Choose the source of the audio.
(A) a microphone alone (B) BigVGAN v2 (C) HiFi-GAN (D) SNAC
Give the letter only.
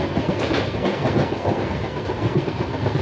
D